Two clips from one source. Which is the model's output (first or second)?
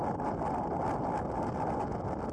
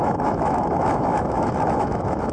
second